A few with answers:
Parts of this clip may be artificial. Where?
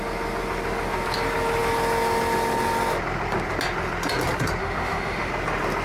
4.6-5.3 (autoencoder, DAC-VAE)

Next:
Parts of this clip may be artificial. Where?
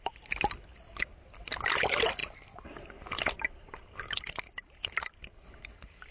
2.2-6.1 (vocoder, BigVGAN v2)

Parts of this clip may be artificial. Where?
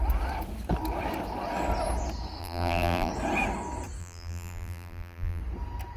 2.4-3.1 (vocoder, BigVGAN v2); 4.0-5.4